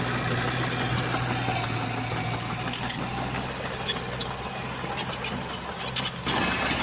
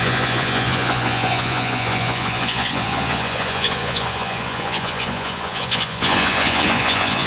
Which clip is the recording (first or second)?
first